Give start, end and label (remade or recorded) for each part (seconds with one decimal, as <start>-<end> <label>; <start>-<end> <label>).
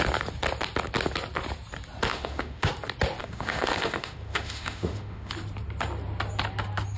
0.0-2.1 recorded; 2.1-2.7 remade; 2.7-3.2 recorded; 3.2-5.3 remade; 5.3-7.0 recorded